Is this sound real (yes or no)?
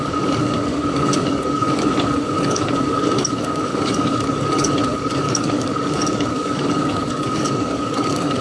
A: no